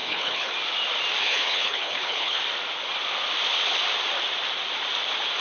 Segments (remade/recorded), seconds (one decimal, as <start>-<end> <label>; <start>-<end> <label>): 0.0-0.5 remade; 0.5-1.2 recorded; 1.2-2.4 remade; 2.4-5.4 recorded